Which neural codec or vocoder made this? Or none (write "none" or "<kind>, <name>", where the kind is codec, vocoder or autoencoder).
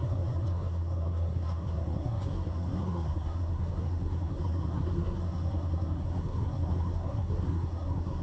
codec, SNAC